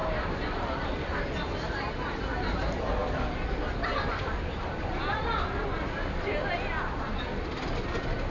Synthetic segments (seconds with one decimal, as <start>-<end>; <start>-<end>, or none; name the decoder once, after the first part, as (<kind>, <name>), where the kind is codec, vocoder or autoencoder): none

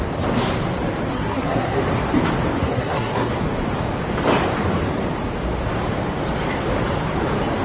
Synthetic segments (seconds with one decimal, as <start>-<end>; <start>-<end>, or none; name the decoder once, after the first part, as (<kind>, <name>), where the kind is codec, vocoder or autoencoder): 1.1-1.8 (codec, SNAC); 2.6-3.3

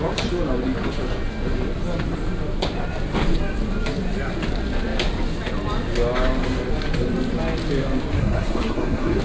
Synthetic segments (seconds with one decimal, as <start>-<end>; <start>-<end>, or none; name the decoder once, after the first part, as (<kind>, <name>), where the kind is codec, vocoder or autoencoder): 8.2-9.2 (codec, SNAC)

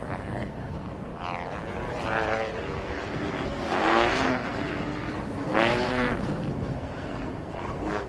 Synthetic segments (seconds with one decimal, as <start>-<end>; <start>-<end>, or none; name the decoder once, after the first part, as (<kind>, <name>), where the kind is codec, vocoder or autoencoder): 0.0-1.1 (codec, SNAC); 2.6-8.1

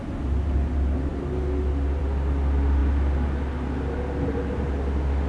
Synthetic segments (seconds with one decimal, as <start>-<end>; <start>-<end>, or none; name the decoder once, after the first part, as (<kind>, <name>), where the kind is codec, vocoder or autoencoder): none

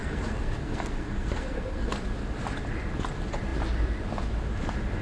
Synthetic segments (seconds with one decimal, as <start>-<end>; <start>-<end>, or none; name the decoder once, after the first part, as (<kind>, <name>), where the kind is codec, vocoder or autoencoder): 0.0-1.9 (codec, SNAC)

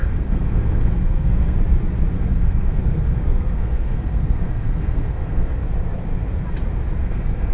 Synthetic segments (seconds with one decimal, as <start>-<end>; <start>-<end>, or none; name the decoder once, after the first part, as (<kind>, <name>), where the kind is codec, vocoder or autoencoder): 0.0-1.6 (codec, SNAC); 2.1-5.6; 7.0-7.5

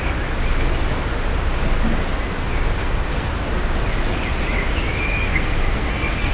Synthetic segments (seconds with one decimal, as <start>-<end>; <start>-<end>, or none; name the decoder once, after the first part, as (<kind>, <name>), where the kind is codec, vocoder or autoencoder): 2.8-3.3 (codec, SNAC); 5.3-6.3